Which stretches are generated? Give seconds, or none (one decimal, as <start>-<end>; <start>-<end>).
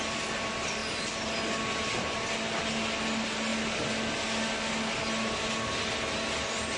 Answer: none